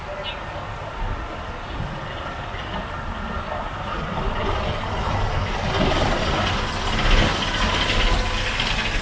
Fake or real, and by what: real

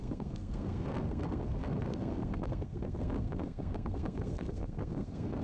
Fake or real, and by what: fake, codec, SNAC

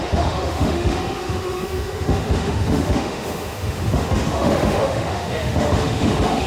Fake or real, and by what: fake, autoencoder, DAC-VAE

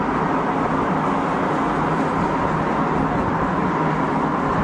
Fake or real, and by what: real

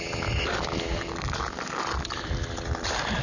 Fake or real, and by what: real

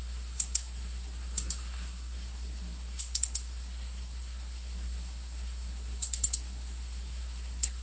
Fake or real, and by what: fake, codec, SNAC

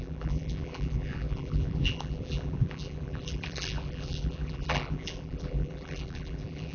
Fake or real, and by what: fake, vocoder, BigVGAN v2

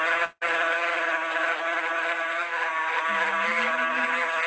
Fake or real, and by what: real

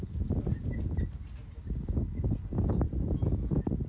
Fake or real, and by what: real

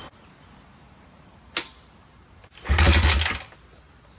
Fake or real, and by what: real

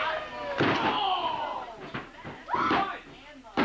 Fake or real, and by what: real